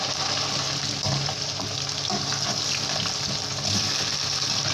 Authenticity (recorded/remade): recorded